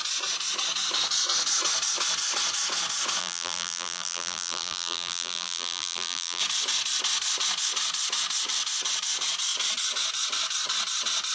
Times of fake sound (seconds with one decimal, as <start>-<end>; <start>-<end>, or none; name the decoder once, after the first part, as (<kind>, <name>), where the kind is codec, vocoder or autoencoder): 3.2-6.4 (vocoder, BigVGAN v2)